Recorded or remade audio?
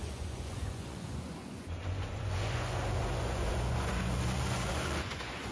remade